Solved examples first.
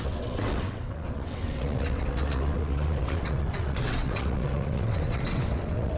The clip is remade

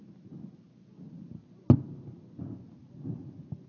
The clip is recorded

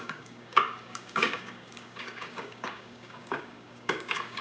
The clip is remade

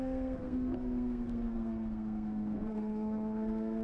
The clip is remade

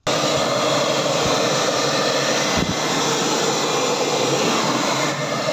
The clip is recorded